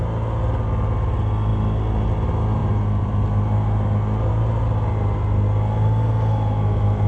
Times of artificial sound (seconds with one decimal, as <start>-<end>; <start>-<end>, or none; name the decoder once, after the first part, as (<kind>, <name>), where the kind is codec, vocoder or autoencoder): 2.6-4.3 (vocoder, BigVGAN v2)